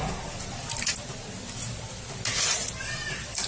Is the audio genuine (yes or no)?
yes